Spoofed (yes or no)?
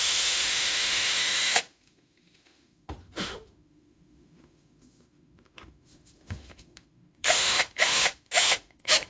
yes